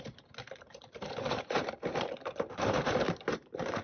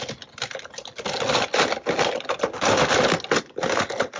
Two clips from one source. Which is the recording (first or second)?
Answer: second